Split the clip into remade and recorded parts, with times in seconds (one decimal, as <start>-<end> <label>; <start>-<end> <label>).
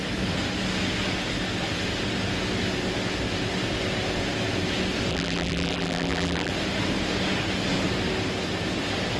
0.0-5.1 recorded; 5.1-6.5 remade; 6.5-9.2 recorded